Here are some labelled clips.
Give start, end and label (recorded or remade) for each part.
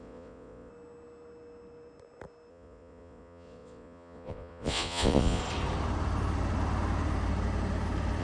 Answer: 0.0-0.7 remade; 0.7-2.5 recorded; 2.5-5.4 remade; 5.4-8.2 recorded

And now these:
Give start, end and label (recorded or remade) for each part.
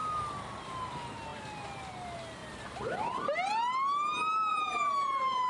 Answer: 0.0-4.5 recorded; 4.5-5.5 remade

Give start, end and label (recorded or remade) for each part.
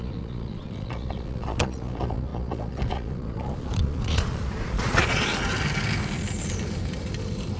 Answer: 0.0-5.3 remade; 5.3-7.6 recorded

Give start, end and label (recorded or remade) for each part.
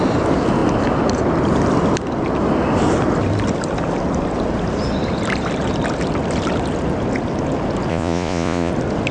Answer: 0.0-7.9 recorded; 7.9-8.7 remade; 8.7-9.1 recorded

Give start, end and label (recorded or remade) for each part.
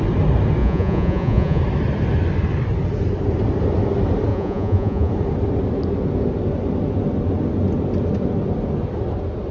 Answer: 0.0-0.6 recorded; 0.6-1.6 remade; 1.6-4.3 recorded; 4.3-5.1 remade; 5.1-9.5 recorded